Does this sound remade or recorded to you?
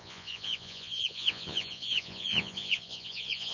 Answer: remade